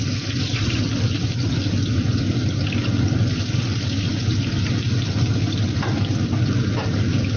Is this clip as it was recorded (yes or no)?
yes